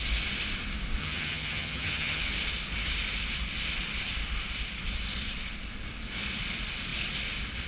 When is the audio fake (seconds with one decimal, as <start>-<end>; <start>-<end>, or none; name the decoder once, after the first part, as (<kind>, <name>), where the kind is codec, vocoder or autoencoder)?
1.0-2.2 (vocoder, HiFi-GAN)